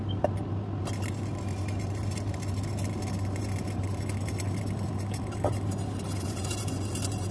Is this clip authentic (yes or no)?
yes